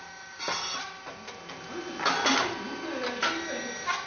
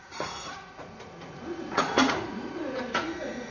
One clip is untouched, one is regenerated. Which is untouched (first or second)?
first